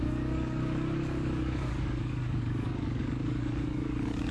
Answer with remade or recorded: remade